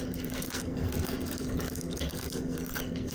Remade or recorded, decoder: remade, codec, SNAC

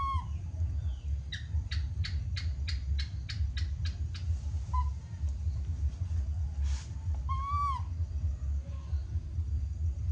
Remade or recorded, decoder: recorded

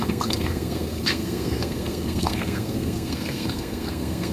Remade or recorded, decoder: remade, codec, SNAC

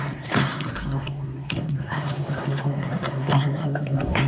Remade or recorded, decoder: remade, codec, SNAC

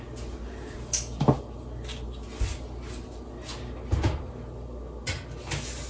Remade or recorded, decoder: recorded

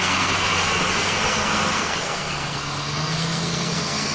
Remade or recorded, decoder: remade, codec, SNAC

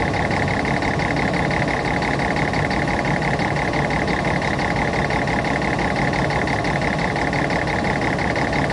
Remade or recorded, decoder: recorded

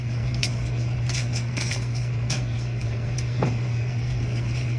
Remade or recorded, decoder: remade, codec, SNAC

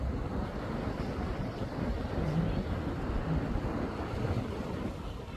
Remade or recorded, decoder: recorded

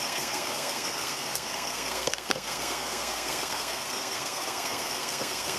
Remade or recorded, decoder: remade, codec, SNAC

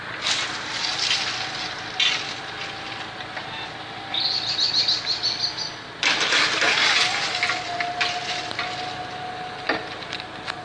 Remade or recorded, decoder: recorded